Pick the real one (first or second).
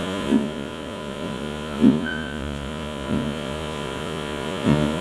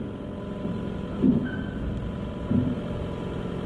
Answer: second